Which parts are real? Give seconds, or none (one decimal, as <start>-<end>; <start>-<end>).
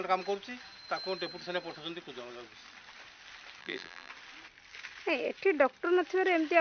0.0-3.6; 4.1-6.6